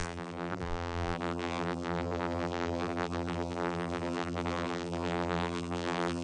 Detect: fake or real fake